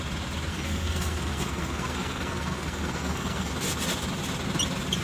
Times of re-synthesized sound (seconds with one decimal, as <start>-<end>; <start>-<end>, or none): 0.5-3.5